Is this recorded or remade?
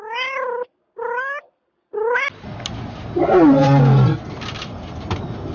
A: recorded